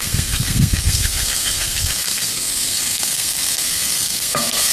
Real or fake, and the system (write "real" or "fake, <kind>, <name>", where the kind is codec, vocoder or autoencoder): fake, codec, SNAC